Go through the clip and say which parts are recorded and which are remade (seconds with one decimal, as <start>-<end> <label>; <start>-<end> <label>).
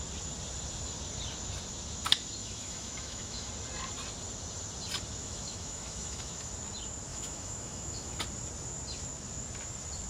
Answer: 0.0-2.4 recorded; 2.4-3.5 remade; 3.5-5.2 recorded; 5.2-6.5 remade; 6.5-7.1 recorded; 7.1-8.2 remade; 8.2-10.1 recorded